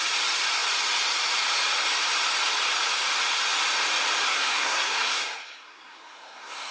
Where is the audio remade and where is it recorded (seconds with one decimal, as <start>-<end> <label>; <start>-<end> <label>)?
0.0-4.3 recorded; 4.3-6.7 remade